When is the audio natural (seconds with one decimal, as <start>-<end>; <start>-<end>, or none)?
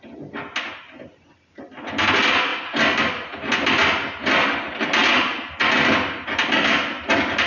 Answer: 0.0-7.5